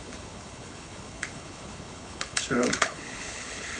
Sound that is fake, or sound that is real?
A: fake